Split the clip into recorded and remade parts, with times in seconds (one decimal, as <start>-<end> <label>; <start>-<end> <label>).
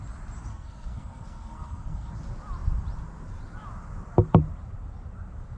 0.0-0.5 recorded; 0.5-2.1 remade; 2.1-5.6 recorded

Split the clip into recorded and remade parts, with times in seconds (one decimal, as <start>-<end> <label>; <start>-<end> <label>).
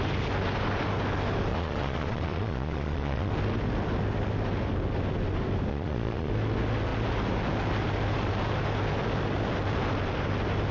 0.0-1.5 recorded; 1.5-3.3 remade; 3.3-5.7 recorded; 5.7-6.3 remade; 6.3-10.7 recorded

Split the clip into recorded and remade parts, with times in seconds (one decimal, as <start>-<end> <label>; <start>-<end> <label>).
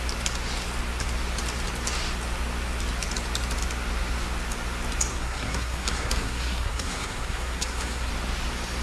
0.0-5.1 recorded; 5.1-8.1 remade; 8.1-8.8 recorded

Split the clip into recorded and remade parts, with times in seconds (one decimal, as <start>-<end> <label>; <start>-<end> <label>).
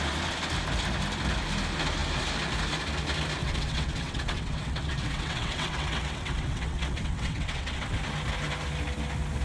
0.0-3.4 recorded; 3.4-8.0 remade; 8.0-9.4 recorded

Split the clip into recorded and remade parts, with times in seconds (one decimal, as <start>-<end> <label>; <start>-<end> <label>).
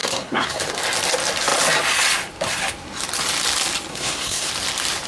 0.0-0.6 remade; 0.6-3.9 recorded; 3.9-4.5 remade; 4.5-5.1 recorded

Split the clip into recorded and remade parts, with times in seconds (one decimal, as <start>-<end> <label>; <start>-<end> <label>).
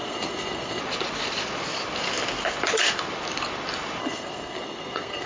0.0-0.8 remade; 0.8-4.0 recorded; 4.0-5.3 remade